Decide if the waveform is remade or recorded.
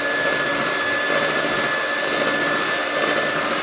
recorded